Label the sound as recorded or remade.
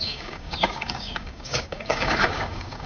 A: remade